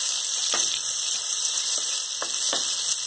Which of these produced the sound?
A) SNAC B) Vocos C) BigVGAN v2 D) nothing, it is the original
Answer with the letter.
D